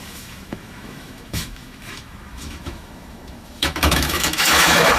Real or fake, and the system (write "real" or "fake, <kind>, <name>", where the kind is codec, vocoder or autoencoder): fake, autoencoder, DAC-VAE